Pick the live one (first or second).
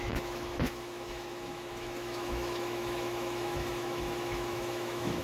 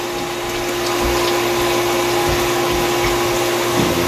second